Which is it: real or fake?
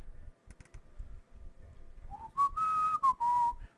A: real